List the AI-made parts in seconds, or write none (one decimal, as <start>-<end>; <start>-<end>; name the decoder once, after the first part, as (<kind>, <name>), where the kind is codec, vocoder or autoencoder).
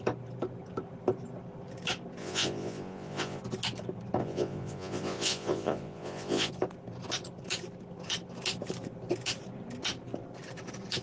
2.2-3.4 (vocoder, Vocos); 4.2-6.5